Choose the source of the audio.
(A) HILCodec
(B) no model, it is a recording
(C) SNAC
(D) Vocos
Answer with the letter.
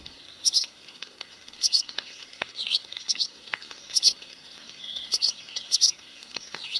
C